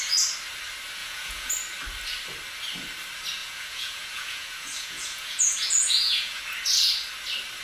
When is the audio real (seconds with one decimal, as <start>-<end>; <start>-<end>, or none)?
0.0-1.0; 1.5-3.4; 6.4-7.6